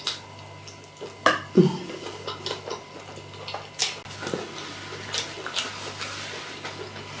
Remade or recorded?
recorded